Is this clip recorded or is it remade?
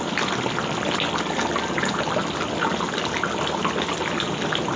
recorded